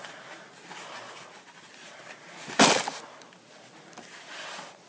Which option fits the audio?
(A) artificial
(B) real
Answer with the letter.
B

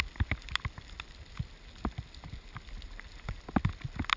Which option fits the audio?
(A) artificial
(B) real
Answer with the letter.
B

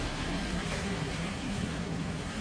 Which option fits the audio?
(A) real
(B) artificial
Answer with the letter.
B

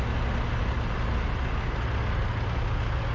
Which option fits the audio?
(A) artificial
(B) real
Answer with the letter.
B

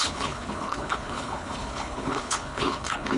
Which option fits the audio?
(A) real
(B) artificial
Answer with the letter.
B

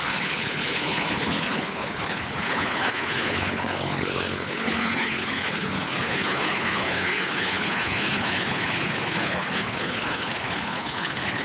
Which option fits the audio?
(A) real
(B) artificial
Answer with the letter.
B